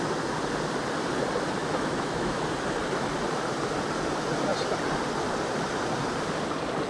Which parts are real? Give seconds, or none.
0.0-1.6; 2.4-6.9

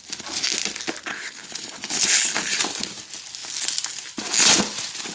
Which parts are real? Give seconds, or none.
0.0-1.1; 2.6-5.1

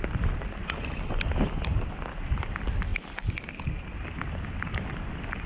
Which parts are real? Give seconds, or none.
0.0-5.5

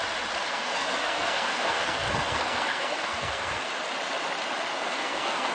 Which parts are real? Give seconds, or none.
0.0-0.4; 3.7-4.7

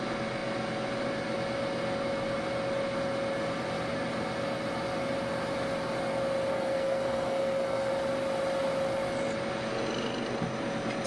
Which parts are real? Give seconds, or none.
0.0-6.5; 7.9-11.1

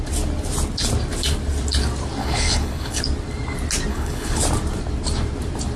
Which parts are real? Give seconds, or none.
0.0-2.2; 3.0-3.9; 4.4-5.8

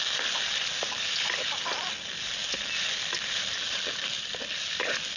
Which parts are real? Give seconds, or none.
0.0-5.2